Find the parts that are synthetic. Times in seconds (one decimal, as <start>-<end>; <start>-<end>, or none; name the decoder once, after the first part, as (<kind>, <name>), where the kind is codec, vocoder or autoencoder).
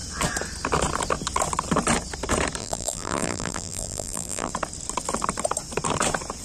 2.6-4.5 (vocoder, BigVGAN v2)